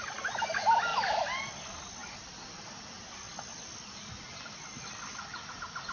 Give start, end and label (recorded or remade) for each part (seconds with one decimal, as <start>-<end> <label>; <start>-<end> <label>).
0.0-0.9 recorded; 0.9-1.5 remade; 1.5-2.0 recorded; 2.0-5.5 remade; 5.5-5.9 recorded